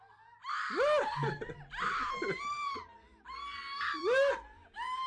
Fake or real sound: real